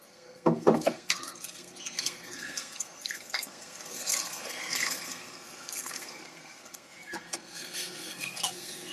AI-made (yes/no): yes